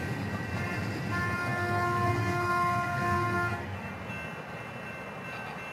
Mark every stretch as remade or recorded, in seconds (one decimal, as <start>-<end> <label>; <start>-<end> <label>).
0.0-1.4 recorded; 1.4-3.9 remade; 3.9-5.7 recorded